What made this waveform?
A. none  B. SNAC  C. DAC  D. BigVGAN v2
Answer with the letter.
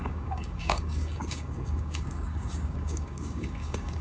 C